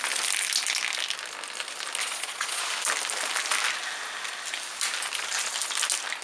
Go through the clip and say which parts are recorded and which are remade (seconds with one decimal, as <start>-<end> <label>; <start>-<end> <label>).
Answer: 0.0-2.0 recorded; 2.0-2.6 remade; 2.6-6.2 recorded